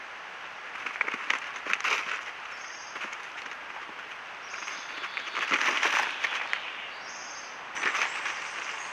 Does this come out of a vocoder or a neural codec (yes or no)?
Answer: no